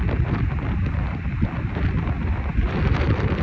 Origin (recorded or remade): remade